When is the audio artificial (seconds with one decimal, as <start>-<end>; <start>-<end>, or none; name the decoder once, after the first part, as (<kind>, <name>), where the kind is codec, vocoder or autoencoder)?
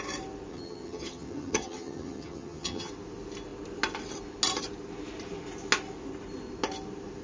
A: 0.5-2.9 (vocoder, HiFi-GAN)